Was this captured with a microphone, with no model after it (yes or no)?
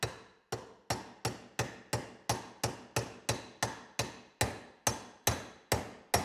yes